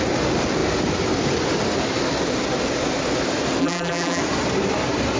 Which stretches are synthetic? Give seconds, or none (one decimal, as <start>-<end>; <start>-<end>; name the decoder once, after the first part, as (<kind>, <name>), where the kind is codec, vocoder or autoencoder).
3.6-4.2 (vocoder, BigVGAN v2)